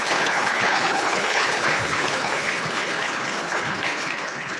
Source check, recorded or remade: remade